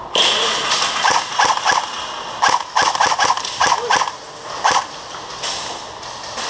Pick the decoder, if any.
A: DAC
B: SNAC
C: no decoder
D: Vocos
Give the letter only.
C